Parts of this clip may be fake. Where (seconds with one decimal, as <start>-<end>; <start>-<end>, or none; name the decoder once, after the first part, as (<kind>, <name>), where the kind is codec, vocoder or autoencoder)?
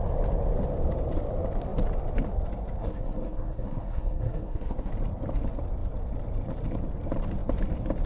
2.8-4.9 (codec, SNAC)